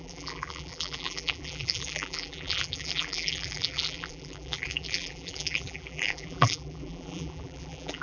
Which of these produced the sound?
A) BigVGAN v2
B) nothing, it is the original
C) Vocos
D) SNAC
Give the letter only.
A